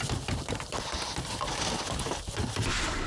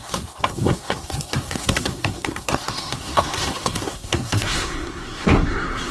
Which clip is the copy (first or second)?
second